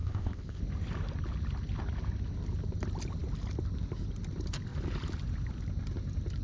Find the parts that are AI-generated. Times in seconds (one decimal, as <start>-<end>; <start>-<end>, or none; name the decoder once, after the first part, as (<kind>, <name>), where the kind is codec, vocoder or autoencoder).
0.0-0.6 (codec, ZipCodec)